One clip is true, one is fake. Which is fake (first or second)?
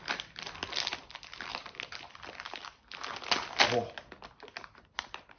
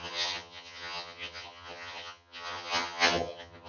second